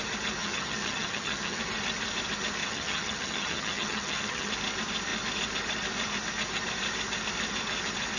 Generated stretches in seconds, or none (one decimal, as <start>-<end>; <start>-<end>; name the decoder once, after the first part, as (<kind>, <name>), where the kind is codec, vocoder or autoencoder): 0.4-1.6 (vocoder, HiFi-GAN); 2.6-4.5